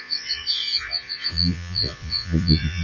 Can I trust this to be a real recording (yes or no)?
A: no